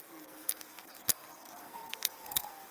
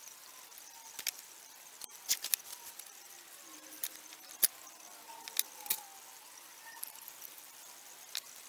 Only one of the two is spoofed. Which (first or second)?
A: first